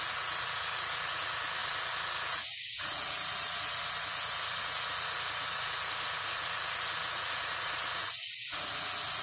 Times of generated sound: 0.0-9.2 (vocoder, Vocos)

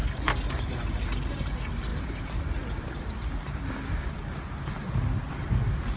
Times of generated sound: none

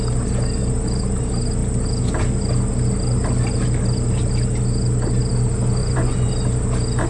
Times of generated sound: 5.8-6.3 (vocoder, Vocos)

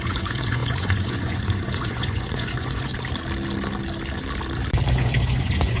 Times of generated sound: 0.0-2.9 (vocoder, Vocos); 4.9-5.8

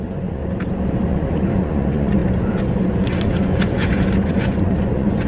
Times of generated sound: 0.0-0.4 (vocoder, Vocos); 1.1-2.2; 2.9-5.3

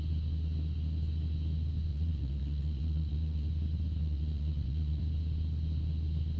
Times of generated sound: 1.9-3.5 (vocoder, Vocos); 4.0-5.0